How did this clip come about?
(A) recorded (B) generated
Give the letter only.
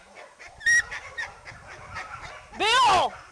A